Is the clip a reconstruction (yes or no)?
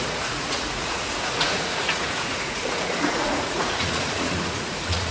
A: yes